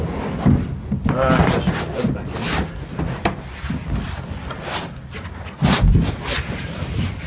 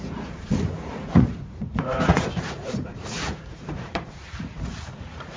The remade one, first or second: second